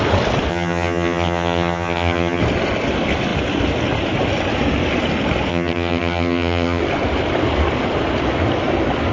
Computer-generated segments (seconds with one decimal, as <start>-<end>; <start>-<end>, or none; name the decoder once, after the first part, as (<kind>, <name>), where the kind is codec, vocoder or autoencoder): 0.5-2.4 (vocoder, HiFi-GAN); 5.5-6.8